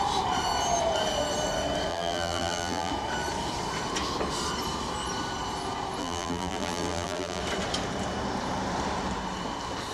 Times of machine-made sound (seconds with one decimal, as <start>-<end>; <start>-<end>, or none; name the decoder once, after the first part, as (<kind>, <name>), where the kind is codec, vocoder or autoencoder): 1.9-2.9 (vocoder, BigVGAN v2); 6.0-7.4